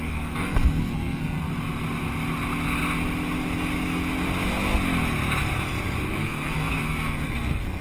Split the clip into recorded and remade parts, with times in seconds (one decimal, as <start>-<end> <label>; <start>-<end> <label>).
0.0-1.5 remade; 1.5-6.2 recorded; 6.2-7.8 remade